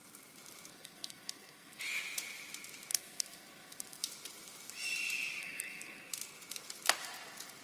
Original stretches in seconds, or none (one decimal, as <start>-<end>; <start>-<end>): 0.0-0.7; 1.8-2.9; 4.0-5.4; 6.1-7.6